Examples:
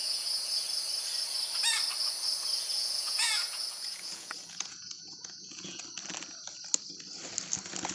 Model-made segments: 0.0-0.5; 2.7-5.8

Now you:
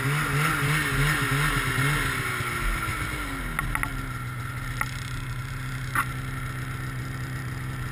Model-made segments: 2.9-3.4

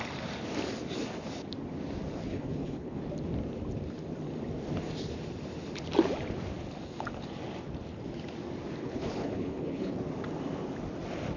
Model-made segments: 2.3-3.0; 8.8-9.9

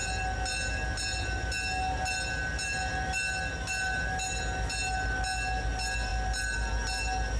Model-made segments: none